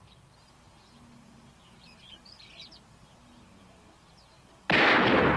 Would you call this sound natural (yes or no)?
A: yes